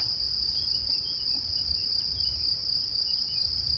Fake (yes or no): no